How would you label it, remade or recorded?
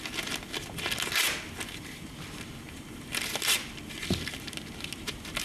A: recorded